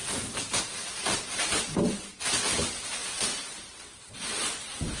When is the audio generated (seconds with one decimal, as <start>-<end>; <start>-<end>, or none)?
none